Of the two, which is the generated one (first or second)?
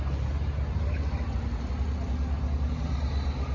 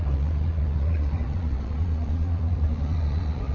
second